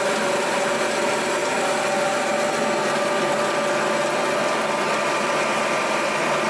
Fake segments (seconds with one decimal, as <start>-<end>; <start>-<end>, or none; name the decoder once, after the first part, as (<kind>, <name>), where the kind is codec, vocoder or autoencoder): none